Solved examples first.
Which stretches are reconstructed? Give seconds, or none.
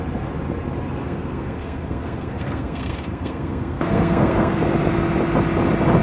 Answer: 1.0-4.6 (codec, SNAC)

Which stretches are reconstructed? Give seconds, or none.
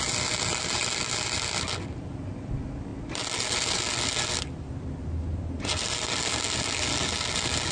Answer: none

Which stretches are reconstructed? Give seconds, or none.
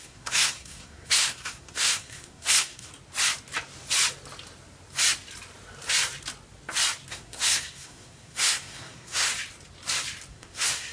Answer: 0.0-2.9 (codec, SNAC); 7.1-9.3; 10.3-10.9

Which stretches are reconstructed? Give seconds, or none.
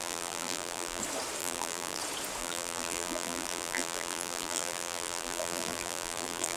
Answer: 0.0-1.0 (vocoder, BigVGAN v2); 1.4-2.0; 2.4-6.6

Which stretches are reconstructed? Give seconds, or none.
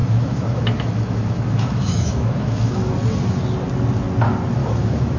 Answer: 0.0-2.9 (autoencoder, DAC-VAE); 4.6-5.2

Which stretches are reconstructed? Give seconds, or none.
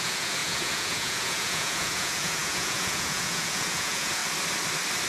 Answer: 0.0-4.2 (vocoder, Vocos)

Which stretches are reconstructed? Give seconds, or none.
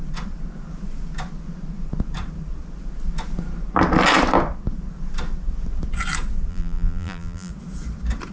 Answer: 6.5-7.5 (vocoder, BigVGAN v2)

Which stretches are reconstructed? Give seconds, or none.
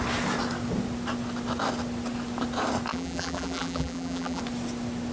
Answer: 2.9-4.4 (vocoder, BigVGAN v2)